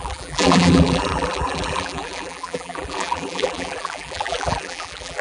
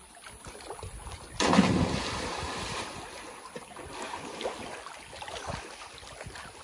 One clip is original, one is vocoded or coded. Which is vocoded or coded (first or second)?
first